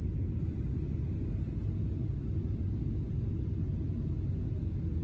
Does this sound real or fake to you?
real